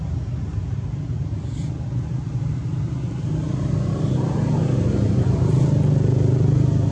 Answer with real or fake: real